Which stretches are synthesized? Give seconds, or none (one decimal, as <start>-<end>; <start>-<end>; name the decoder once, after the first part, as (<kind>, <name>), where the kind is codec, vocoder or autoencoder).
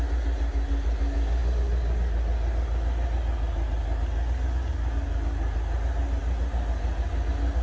none